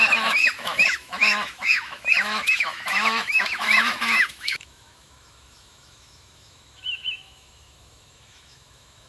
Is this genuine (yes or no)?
no